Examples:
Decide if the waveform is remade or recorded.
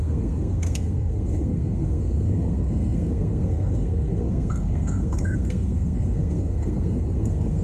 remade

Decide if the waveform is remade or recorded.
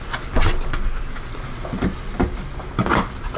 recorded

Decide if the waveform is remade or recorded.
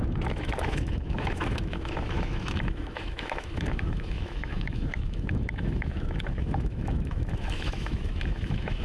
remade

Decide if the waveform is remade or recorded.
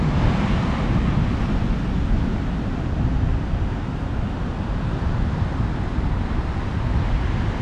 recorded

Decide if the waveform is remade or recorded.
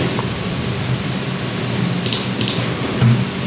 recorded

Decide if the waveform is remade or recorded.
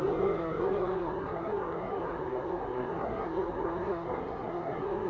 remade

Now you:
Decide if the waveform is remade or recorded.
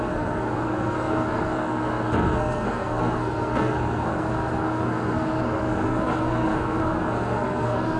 remade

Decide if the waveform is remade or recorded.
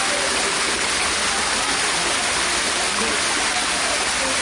recorded